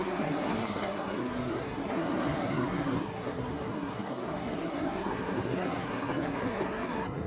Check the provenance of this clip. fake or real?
fake